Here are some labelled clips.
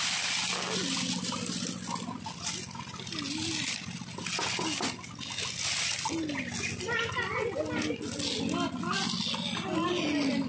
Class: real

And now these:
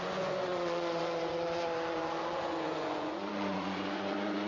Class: fake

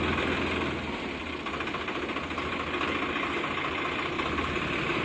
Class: real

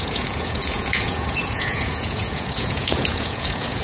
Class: fake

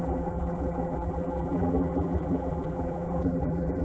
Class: fake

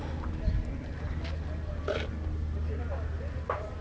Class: real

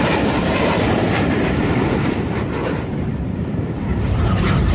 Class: fake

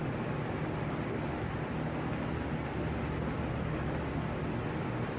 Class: real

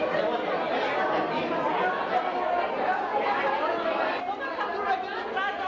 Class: real